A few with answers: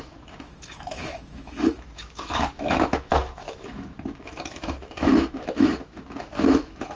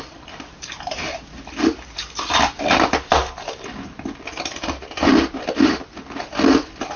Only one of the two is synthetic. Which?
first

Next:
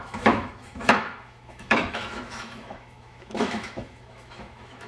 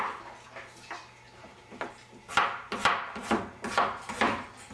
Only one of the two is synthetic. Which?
first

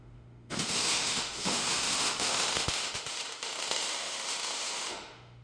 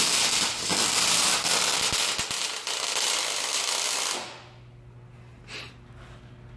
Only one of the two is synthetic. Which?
first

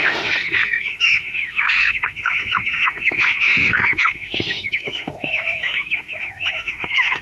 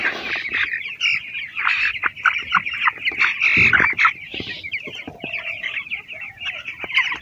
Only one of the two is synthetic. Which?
first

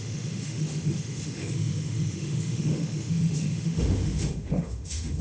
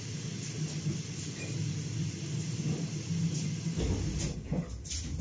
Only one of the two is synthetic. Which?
first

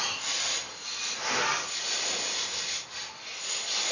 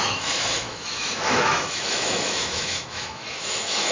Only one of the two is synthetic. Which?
second